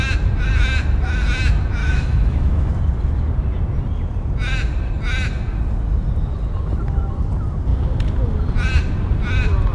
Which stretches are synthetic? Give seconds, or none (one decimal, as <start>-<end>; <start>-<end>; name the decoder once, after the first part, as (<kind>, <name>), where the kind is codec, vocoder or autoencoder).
1.8-2.7 (autoencoder, DAC-VAE)